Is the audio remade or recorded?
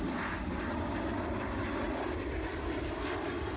recorded